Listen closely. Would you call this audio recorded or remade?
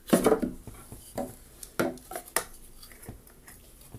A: recorded